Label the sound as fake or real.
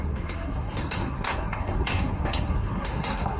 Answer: fake